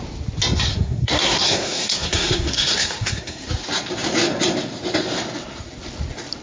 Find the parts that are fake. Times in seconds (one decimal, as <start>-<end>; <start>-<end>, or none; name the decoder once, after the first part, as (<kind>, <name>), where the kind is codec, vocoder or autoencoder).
0.7-3.5 (codec, SNAC)